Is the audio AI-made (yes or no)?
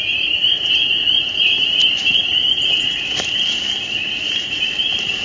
yes